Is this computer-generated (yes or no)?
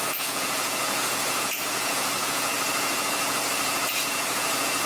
yes